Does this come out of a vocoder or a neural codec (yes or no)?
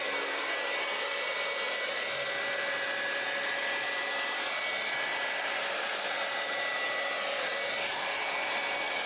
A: no